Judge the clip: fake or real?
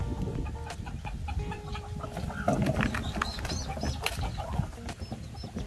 real